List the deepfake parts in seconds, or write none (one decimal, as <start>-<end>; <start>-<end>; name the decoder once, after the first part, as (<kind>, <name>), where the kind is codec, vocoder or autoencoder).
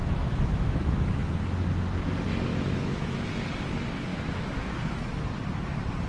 0.0-1.3 (autoencoder, DAC-VAE); 2.5-3.2; 4.1-5.1